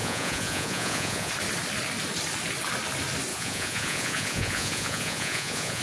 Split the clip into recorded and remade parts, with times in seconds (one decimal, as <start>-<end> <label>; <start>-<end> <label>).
0.0-1.3 remade; 1.3-3.3 recorded; 3.3-5.8 remade